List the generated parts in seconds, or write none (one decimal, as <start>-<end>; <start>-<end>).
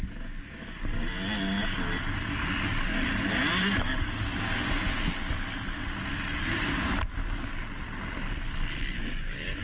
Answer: none